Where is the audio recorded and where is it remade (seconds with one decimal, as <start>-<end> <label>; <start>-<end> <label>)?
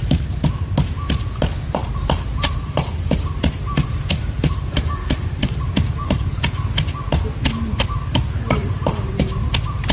0.0-1.8 recorded; 1.8-6.2 remade; 6.2-8.6 recorded; 8.6-9.1 remade; 9.1-9.9 recorded